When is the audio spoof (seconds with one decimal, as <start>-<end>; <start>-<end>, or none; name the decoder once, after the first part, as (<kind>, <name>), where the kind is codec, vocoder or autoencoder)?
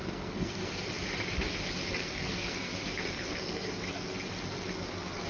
0.0-0.9 (codec, SNAC); 2.0-3.7